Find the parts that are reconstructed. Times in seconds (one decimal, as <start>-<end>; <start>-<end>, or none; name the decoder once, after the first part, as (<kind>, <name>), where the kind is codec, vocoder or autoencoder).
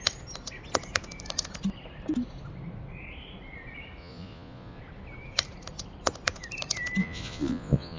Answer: 4.0-4.8 (vocoder, Vocos); 7.0-8.0